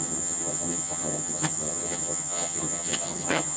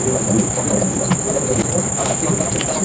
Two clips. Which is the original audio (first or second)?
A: second